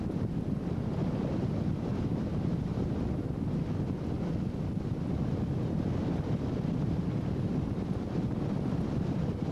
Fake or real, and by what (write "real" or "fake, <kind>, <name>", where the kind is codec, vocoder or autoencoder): fake, vocoder, BigVGAN v2